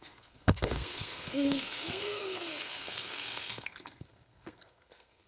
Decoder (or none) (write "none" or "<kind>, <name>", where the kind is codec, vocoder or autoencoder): codec, SNAC